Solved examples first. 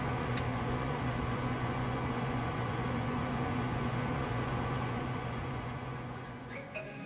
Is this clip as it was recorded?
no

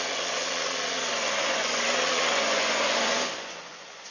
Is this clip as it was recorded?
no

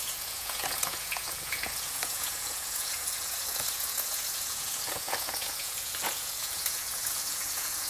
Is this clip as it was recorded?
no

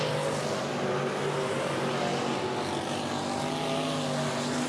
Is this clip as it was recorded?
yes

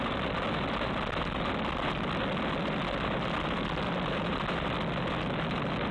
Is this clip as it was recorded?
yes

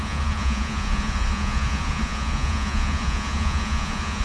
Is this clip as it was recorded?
no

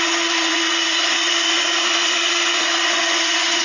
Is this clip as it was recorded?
no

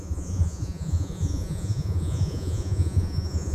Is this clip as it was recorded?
no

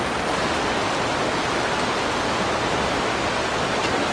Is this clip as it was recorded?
yes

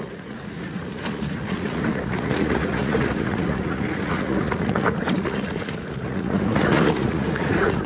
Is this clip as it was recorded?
no